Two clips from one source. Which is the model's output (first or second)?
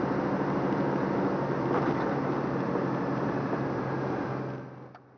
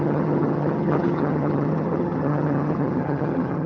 second